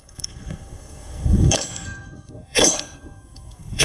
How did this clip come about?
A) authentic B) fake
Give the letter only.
B